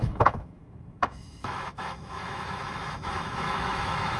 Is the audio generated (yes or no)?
yes